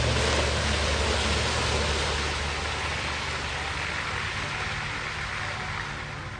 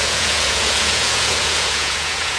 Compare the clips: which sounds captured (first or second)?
first